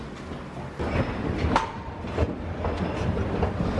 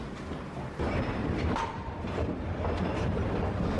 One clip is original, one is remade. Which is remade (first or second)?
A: second